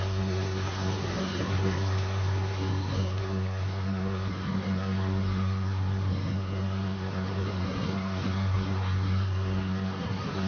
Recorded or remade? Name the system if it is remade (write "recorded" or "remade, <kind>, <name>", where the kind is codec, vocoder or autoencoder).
remade, codec, SNAC